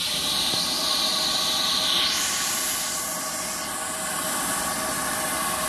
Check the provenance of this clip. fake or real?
real